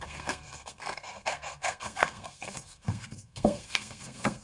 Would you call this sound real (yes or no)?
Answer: no